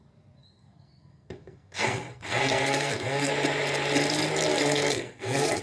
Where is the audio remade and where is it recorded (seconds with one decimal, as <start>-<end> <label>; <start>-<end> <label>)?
0.0-0.4 recorded; 0.4-3.3 remade; 3.3-4.5 recorded; 4.5-5.6 remade